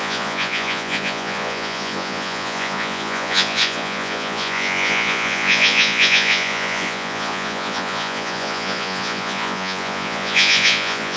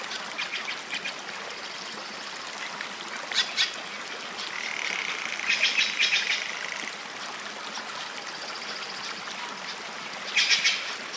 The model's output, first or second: first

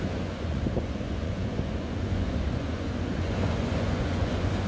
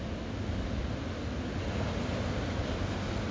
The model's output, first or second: first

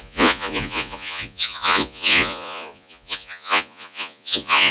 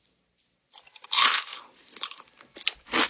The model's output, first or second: first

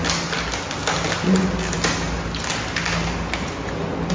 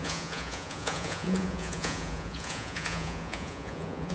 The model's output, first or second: second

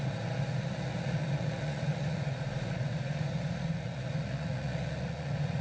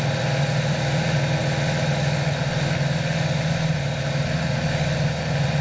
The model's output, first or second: first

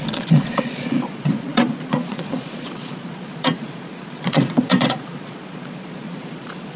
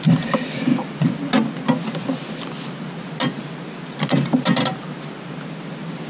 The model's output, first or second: first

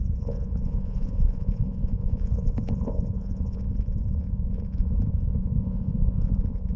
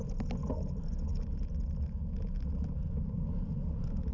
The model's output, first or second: first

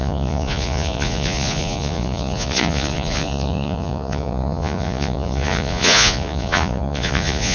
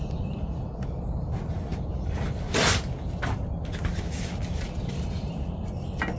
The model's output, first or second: first